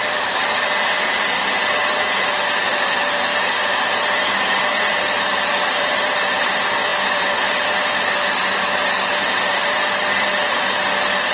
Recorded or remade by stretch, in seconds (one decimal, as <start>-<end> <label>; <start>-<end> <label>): 0.0-11.3 remade